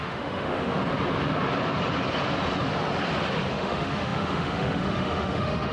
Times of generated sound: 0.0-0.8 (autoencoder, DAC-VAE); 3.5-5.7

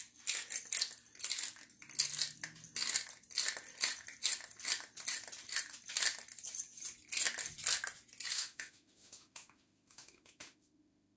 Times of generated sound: 8.3-11.2 (autoencoder, DAC-VAE)

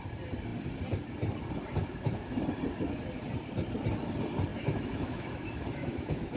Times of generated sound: 1.8-2.4 (autoencoder, DAC-VAE); 4.5-6.4